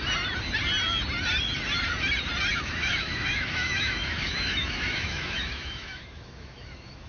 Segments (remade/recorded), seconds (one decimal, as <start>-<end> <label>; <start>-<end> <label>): 0.0-2.5 recorded; 2.5-7.1 remade